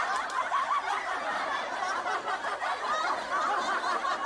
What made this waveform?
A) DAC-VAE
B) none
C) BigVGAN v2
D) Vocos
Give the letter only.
B